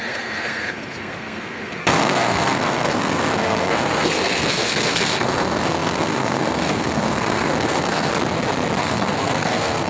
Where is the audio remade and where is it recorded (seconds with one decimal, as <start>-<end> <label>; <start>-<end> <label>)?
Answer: 0.0-8.1 remade; 8.1-8.8 recorded; 8.8-9.9 remade